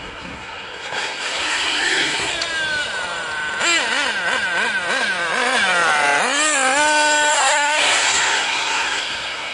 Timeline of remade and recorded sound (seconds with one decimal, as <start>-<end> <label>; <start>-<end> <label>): 0.0-2.3 remade; 2.3-7.3 recorded; 7.3-9.5 remade